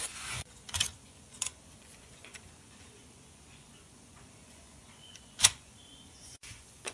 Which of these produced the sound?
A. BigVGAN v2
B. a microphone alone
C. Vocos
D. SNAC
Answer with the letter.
C